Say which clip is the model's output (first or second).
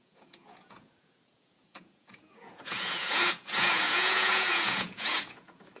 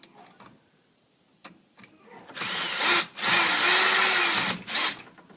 first